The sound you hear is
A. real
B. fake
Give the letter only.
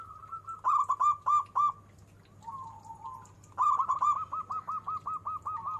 A